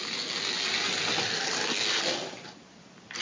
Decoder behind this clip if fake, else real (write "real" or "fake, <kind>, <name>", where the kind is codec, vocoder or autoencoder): real